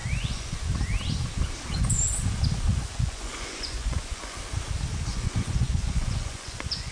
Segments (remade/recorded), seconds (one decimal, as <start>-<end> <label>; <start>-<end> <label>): 0.0-0.7 remade; 0.7-2.7 recorded; 2.7-4.4 remade; 4.4-5.1 recorded; 5.1-6.9 remade